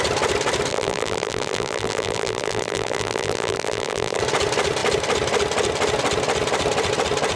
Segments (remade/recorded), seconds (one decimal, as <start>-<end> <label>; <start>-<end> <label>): 0.0-0.7 recorded; 0.7-4.2 remade; 4.2-7.4 recorded